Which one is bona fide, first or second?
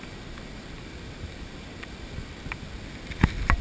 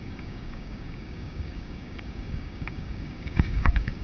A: first